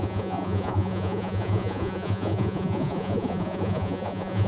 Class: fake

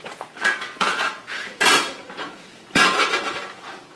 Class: fake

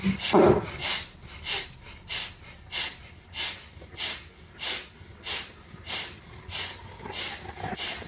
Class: real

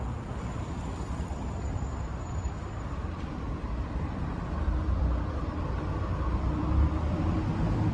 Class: fake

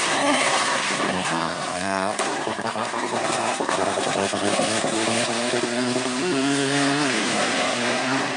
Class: fake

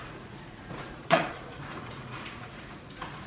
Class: fake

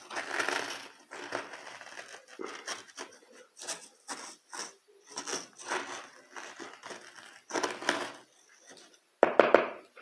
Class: real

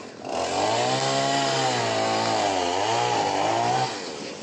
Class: real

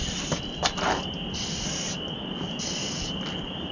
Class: real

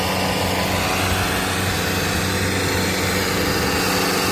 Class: real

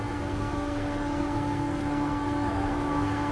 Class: fake